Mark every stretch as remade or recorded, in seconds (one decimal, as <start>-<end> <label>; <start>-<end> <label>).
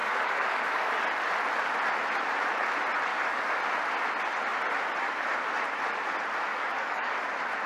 0.0-0.9 remade; 0.9-3.1 recorded; 3.1-3.6 remade; 3.6-6.5 recorded; 6.5-7.2 remade; 7.2-7.7 recorded